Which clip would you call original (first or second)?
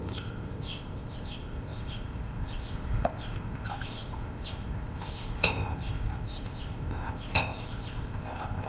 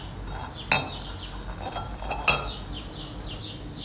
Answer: second